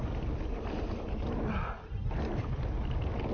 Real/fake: real